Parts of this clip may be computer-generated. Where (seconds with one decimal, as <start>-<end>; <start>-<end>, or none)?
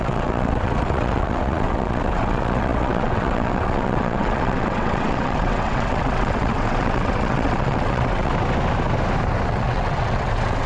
0.0-8.3; 9.5-10.7